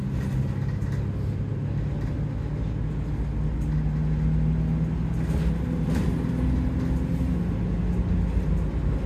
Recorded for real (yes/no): yes